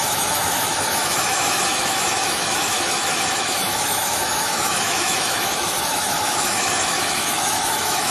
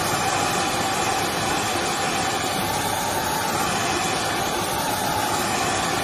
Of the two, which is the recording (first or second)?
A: second